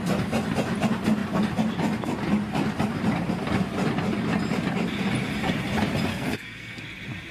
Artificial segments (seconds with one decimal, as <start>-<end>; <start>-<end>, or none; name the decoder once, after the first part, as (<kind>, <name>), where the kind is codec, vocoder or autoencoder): 6.1-6.8 (codec, SNAC)